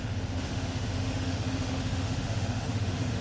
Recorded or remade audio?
remade